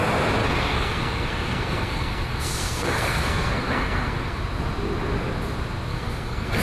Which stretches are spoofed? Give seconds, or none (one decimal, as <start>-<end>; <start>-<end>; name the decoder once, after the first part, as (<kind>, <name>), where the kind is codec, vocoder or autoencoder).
0.4-4.4 (codec, SNAC); 5.9-6.6